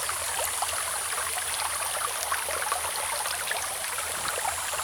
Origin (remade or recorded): recorded